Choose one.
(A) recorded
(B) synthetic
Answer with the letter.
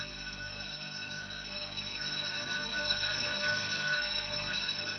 B